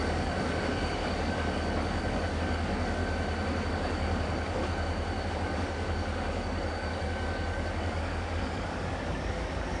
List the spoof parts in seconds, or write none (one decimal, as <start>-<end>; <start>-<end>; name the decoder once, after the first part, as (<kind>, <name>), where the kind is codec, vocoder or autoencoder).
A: 0.0-3.0 (codec, DAC); 3.7-4.6; 5.3-9.8